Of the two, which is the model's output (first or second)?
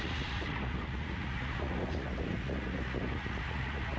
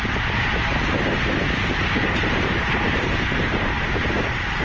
first